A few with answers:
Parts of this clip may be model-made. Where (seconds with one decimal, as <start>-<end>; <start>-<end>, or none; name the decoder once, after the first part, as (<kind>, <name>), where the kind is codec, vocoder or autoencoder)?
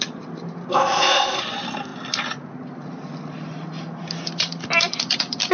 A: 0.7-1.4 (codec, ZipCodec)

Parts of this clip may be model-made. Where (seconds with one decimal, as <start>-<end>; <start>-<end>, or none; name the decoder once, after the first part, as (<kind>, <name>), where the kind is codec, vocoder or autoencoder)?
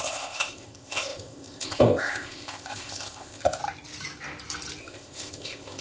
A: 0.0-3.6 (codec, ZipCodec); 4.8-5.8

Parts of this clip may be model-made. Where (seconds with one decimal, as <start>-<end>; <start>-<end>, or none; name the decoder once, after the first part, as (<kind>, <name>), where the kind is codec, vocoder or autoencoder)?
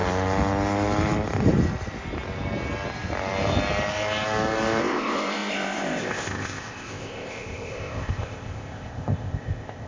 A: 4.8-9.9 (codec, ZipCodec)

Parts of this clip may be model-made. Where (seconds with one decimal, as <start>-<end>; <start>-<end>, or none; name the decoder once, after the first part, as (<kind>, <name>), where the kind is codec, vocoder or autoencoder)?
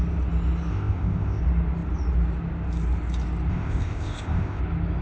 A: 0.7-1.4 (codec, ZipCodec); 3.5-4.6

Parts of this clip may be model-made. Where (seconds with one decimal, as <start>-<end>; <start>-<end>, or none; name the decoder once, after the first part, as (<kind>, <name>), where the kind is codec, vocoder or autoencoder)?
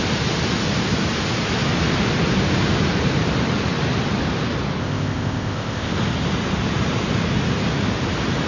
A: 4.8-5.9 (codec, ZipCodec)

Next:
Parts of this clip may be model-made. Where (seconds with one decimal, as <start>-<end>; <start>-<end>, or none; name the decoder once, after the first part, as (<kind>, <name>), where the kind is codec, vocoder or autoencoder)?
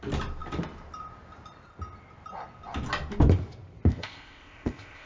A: 3.9-5.1 (codec, ZipCodec)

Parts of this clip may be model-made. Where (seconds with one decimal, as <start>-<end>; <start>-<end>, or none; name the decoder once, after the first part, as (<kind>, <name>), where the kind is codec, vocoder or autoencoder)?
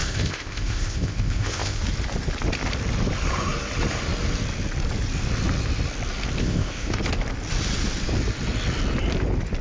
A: 0.0-1.8 (codec, ZipCodec); 6.4-7.0